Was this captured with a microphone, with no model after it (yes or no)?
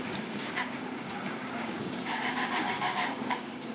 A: no